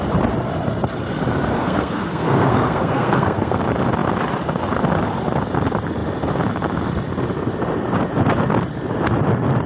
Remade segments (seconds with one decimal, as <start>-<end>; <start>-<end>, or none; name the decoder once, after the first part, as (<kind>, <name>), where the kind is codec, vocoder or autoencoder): 1.5-3.6 (codec, SNAC)